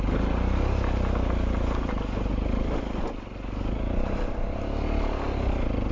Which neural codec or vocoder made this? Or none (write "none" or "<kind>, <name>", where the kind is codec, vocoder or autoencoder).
none